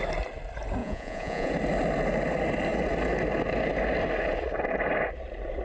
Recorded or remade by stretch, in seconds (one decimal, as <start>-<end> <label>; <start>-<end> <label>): 0.0-0.8 recorded; 0.8-1.5 remade; 1.5-5.6 recorded